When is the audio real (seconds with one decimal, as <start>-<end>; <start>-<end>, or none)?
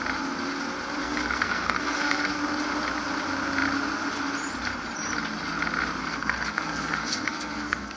0.0-1.0; 2.4-6.0